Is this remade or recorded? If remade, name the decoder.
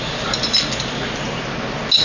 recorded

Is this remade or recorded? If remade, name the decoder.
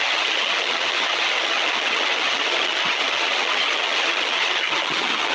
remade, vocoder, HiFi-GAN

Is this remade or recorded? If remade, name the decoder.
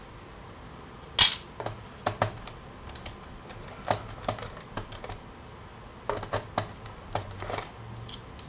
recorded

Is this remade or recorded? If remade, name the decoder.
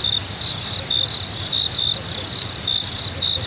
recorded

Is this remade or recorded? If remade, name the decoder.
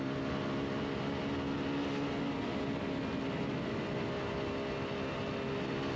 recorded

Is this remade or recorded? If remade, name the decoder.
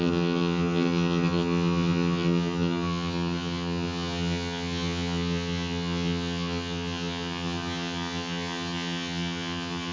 remade, vocoder, HiFi-GAN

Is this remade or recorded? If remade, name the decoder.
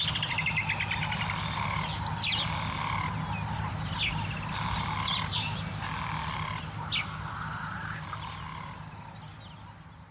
recorded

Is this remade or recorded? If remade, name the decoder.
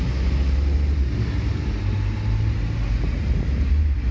recorded